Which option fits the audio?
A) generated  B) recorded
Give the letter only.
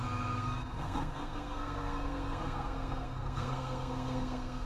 A